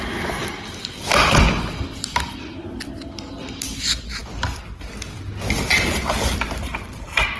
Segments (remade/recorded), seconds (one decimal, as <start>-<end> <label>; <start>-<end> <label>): 0.0-7.4 recorded